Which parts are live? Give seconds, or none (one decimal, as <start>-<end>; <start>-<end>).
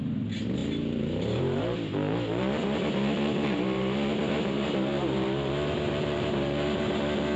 0.0-0.6; 1.4-2.6; 7.0-7.4